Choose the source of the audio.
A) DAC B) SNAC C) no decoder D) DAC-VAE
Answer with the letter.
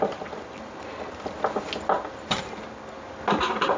C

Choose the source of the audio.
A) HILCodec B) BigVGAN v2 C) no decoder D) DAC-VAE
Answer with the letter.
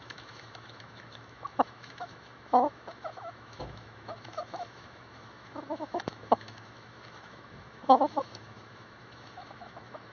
D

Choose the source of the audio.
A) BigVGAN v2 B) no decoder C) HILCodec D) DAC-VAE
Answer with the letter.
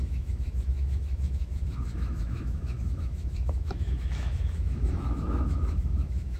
D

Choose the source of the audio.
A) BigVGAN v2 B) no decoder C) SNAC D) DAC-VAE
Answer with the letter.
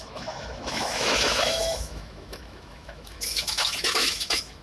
D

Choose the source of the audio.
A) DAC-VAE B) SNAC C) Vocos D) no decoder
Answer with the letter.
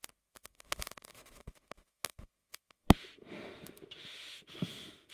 A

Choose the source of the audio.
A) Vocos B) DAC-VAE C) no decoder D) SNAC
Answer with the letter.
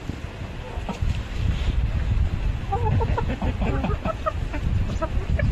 C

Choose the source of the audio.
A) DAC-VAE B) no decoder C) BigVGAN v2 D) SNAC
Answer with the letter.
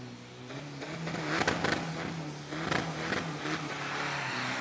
B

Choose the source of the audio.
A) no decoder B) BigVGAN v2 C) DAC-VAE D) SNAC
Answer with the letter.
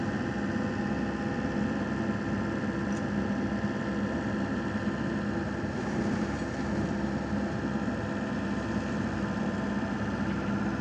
A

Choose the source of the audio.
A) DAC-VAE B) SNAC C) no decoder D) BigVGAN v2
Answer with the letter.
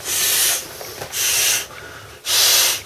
C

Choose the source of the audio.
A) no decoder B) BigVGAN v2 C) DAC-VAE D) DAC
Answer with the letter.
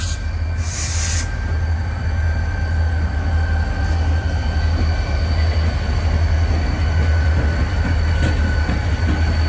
A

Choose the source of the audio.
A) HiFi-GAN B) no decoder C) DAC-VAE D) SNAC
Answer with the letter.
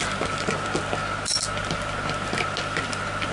B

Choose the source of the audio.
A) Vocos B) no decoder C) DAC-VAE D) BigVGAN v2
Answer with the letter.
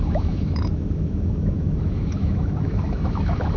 C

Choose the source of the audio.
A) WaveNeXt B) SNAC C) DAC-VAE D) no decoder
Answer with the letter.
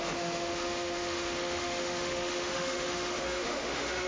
C